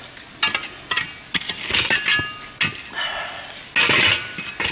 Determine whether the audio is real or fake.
real